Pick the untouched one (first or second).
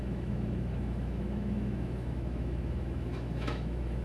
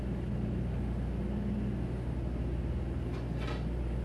second